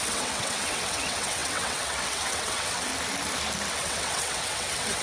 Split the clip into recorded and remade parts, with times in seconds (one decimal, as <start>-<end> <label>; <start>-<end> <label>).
0.0-2.9 remade; 2.9-3.7 recorded; 3.7-5.0 remade